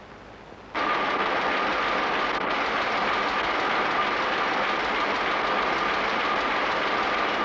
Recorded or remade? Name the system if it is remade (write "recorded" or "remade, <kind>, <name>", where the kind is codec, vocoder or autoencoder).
recorded